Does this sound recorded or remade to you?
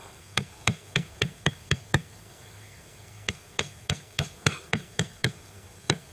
remade